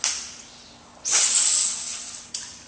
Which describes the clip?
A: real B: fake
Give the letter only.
A